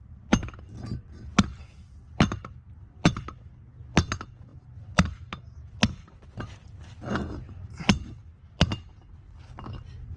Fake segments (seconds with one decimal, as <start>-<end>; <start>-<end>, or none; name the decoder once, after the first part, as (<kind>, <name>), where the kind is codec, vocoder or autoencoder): 1.7-3.5 (vocoder, BigVGAN v2); 4.5-8.2